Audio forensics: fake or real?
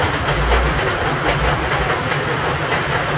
real